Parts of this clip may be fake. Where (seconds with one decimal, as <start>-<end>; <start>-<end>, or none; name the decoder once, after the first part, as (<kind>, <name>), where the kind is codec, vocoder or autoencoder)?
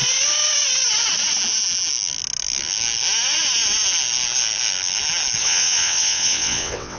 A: 5.4-7.0 (vocoder, WaveNeXt)